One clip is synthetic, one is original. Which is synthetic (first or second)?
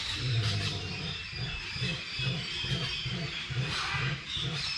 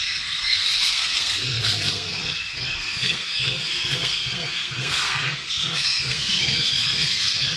second